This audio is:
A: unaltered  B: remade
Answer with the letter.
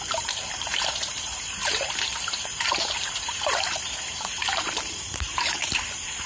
B